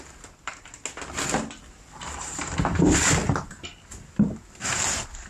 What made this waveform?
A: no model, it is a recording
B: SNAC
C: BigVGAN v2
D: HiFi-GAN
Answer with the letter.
A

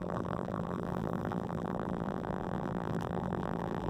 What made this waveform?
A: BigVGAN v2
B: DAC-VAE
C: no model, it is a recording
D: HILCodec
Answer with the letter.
A